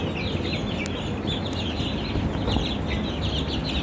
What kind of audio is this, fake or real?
real